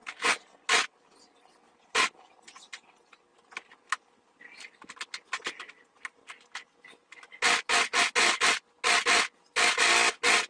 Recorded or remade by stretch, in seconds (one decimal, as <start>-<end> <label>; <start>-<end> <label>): 0.0-10.5 recorded